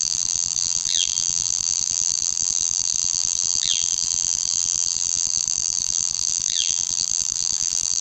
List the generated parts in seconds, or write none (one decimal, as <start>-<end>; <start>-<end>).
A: 0.0-8.0